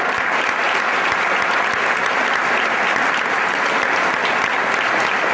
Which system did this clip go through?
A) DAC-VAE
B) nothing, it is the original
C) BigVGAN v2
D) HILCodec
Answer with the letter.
B